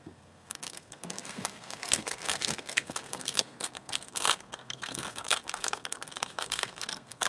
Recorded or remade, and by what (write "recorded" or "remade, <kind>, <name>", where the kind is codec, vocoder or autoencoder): remade, codec, SNAC